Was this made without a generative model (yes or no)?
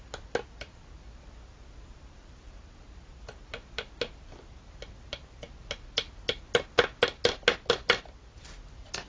yes